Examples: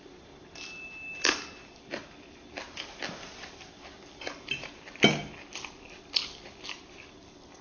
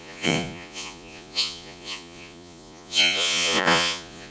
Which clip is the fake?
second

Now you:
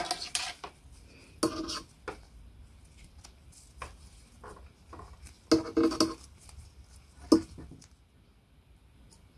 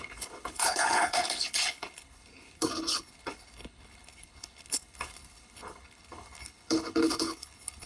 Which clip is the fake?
second